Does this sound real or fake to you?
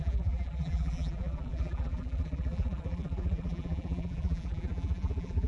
fake